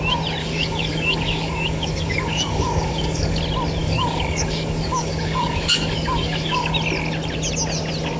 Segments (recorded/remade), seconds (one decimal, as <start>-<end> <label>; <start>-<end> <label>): 0.0-0.4 recorded; 0.4-3.4 remade; 3.4-3.8 recorded; 3.8-6.7 remade; 6.7-8.2 recorded